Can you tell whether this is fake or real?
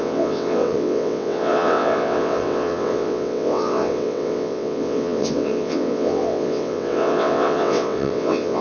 fake